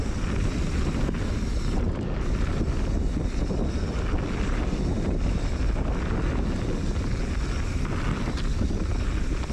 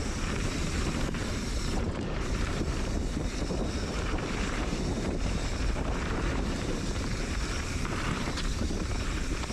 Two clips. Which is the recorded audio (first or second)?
first